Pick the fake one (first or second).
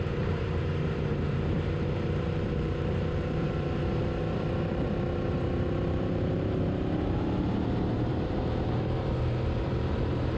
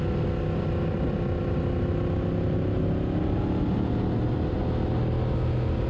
first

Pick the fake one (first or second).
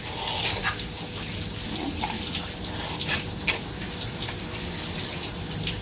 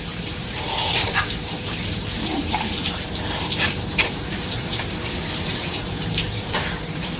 second